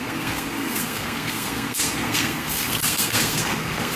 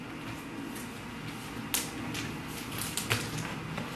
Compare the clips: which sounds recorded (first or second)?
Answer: second